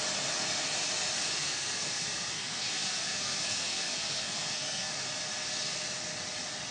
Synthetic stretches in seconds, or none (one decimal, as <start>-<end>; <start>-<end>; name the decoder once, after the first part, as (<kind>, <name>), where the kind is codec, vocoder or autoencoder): 1.4-4.9 (codec, SNAC)